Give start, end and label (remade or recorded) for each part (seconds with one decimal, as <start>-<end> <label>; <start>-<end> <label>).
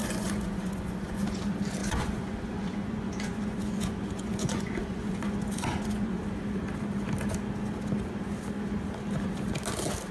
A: 0.0-1.4 remade; 1.4-1.8 recorded; 1.8-6.2 remade; 6.2-10.1 recorded